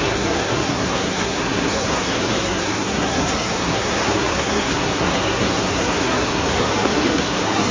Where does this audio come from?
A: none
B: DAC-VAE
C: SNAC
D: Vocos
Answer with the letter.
C